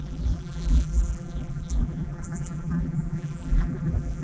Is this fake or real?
fake